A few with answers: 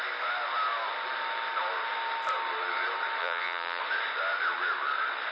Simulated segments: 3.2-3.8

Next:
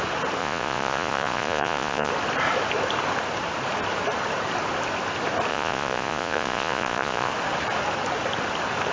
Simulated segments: 0.4-2.1; 5.5-7.3

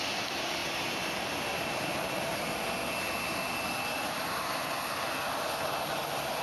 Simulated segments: none